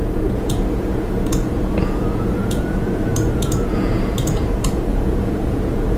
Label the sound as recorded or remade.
remade